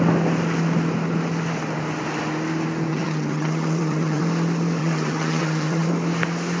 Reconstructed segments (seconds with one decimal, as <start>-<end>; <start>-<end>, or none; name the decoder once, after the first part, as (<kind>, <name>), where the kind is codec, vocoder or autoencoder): 2.9-4.2 (vocoder, HiFi-GAN); 4.8-5.9